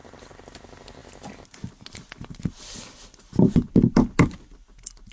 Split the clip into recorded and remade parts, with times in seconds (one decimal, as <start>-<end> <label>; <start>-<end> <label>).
0.0-5.1 recorded

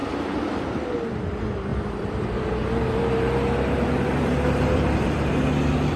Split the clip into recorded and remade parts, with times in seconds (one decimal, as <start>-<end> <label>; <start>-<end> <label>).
0.0-1.7 recorded; 1.7-5.3 remade; 5.3-6.0 recorded

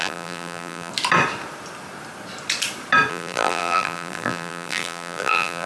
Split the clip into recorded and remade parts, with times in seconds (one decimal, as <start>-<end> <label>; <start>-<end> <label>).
0.0-0.9 remade; 0.9-3.1 recorded; 3.1-5.7 remade

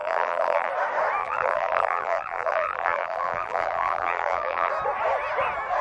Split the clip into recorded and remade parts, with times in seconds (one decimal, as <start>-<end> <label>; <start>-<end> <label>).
0.0-0.7 remade; 0.7-1.2 recorded; 1.2-4.7 remade; 4.7-5.8 recorded

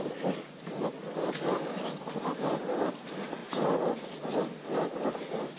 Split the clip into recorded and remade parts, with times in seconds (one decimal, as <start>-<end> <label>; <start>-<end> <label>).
0.0-1.0 remade; 1.0-2.2 recorded; 2.2-3.4 remade; 3.4-5.6 recorded

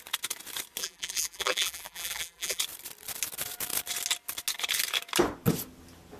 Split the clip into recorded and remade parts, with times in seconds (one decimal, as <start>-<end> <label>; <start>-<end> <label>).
0.0-0.8 recorded; 0.8-2.6 remade; 2.6-6.2 recorded